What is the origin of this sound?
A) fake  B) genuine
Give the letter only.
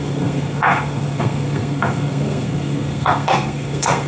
A